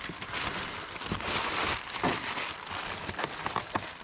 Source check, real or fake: real